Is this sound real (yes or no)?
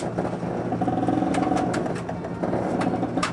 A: yes